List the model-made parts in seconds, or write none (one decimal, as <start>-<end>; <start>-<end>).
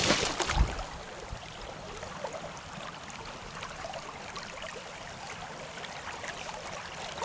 none